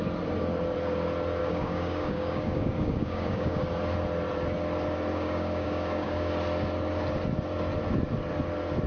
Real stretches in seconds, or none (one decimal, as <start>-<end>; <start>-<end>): 0.0-1.4; 3.6-5.1; 6.3-8.9